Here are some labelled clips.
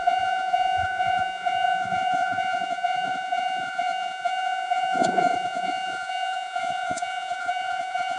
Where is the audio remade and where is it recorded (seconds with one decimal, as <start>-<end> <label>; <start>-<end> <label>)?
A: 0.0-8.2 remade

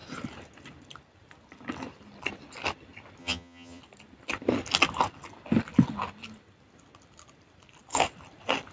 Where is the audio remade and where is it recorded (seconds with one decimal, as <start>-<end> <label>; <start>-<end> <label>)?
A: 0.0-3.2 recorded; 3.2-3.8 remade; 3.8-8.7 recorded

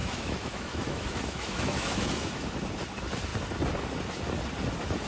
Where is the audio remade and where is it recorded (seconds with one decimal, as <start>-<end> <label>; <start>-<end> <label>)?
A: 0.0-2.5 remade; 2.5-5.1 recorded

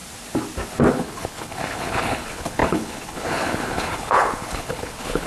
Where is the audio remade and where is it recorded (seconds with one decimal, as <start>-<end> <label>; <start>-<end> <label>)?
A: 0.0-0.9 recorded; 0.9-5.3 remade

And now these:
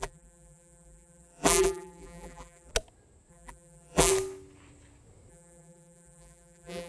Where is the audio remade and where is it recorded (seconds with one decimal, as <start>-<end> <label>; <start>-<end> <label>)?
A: 0.0-2.7 remade; 2.7-3.3 recorded; 3.3-4.1 remade; 4.1-5.3 recorded; 5.3-6.9 remade

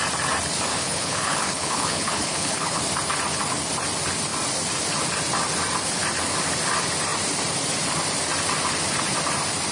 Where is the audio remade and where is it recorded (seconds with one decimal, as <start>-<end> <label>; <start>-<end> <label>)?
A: 0.0-0.7 recorded; 0.7-2.8 remade; 2.8-9.7 recorded

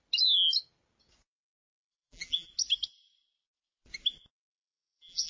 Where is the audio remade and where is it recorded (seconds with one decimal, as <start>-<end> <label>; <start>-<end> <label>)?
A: 0.0-1.7 recorded; 1.7-2.5 remade; 2.5-4.5 recorded; 4.5-5.3 remade